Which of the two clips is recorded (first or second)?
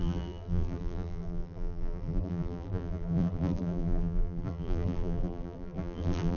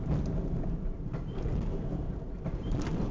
second